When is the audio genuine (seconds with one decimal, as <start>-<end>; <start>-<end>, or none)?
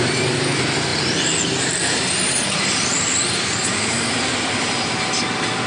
0.0-0.9; 4.3-5.7